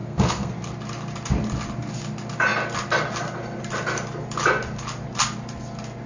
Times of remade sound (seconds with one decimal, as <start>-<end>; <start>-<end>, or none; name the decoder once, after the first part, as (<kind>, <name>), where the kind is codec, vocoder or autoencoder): 0.0-0.5 (codec, SNAC)